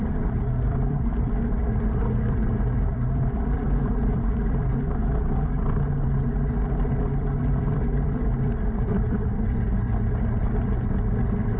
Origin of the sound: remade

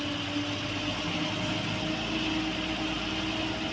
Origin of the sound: recorded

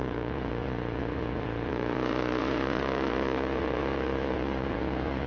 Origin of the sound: remade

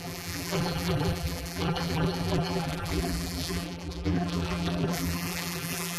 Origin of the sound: remade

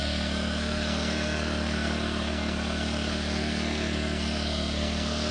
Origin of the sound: remade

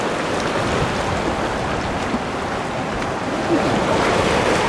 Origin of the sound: recorded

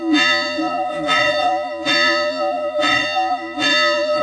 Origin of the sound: remade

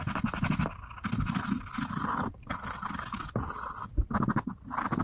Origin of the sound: recorded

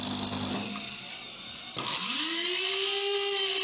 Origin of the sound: recorded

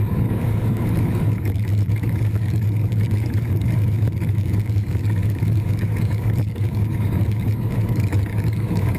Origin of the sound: remade